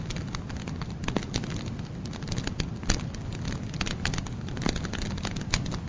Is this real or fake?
real